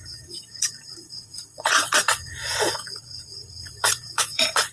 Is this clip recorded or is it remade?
remade